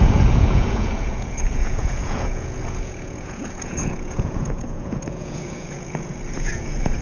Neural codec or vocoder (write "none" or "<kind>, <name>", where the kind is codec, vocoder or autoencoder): vocoder, Vocos